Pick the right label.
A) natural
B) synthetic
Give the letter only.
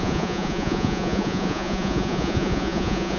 B